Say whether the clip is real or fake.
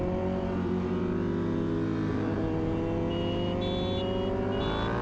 real